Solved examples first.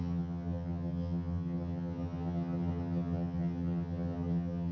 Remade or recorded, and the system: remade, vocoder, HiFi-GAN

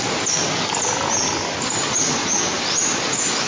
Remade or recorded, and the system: recorded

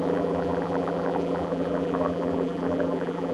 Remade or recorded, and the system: remade, vocoder, BigVGAN v2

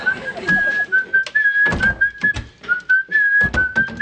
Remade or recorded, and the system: recorded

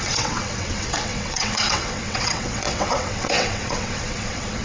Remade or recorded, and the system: remade, vocoder, WaveNeXt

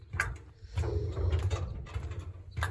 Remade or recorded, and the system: recorded